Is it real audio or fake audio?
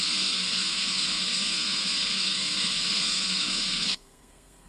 fake